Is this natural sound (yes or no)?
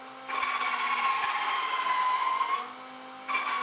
yes